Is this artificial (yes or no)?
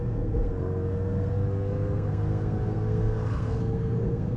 yes